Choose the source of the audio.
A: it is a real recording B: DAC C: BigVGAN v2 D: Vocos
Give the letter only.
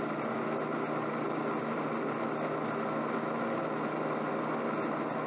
A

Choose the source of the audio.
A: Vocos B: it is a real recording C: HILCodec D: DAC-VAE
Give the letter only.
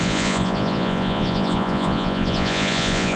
A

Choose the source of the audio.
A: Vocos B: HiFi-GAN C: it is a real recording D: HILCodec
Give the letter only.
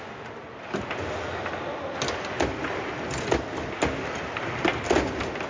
C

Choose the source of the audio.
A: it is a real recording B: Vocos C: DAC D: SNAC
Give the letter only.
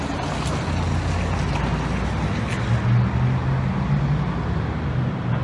A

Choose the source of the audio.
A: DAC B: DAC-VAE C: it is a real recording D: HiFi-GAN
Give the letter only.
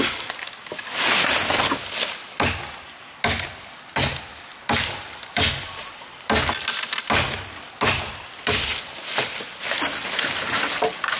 C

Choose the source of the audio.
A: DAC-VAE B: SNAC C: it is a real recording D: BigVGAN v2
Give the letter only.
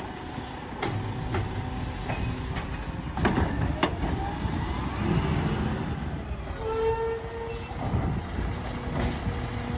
C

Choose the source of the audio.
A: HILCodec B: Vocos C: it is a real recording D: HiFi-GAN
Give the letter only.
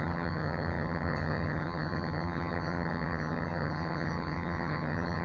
D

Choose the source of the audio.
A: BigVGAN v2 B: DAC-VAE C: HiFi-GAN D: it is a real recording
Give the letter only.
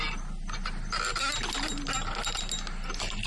D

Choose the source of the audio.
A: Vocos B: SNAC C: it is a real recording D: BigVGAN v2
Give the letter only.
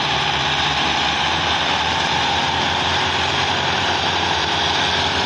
D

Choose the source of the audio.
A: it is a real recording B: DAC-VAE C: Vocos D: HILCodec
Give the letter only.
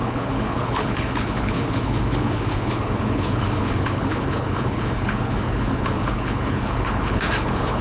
D